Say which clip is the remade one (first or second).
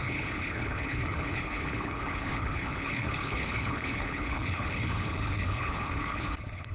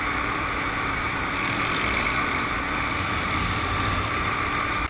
first